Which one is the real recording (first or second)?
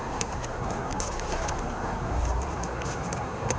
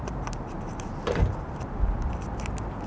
second